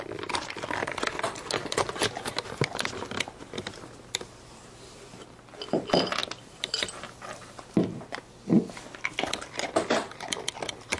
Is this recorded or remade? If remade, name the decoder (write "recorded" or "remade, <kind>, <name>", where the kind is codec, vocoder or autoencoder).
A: recorded